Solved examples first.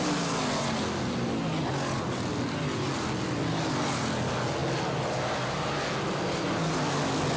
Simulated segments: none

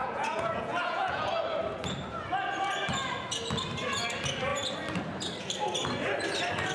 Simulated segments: 0.0-1.3 (vocoder, Vocos)